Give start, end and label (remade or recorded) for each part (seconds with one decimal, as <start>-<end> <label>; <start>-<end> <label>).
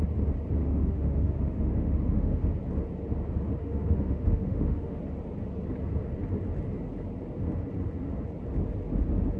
0.0-0.6 recorded; 0.6-2.5 remade; 2.5-3.6 recorded; 3.6-5.0 remade; 5.0-9.4 recorded